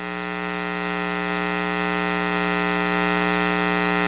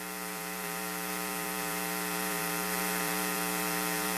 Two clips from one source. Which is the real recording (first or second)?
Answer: first